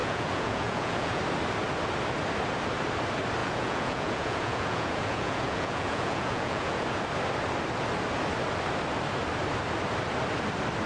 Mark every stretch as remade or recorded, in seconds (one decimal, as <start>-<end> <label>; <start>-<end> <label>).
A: 0.0-1.2 remade; 1.2-3.4 recorded; 3.4-7.0 remade; 7.0-10.9 recorded